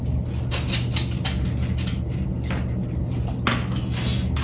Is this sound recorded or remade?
recorded